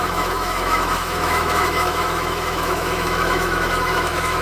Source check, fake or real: fake